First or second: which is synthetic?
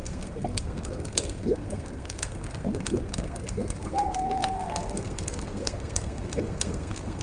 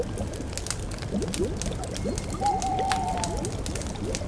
first